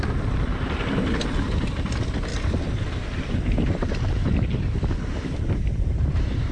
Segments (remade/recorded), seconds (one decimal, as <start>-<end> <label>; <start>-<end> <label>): 0.0-0.5 recorded; 0.5-1.2 remade; 1.2-2.3 recorded; 2.3-6.5 remade